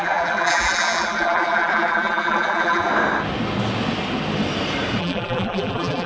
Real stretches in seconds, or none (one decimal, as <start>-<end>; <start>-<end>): 2.9-5.0